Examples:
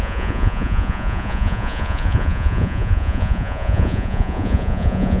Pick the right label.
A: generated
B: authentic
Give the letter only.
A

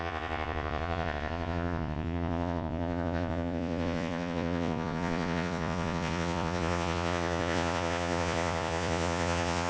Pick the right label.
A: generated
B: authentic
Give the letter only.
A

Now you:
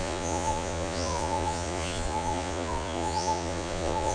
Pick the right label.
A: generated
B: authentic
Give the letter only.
A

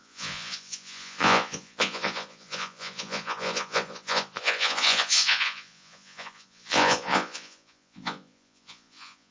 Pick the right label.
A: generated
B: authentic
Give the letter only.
A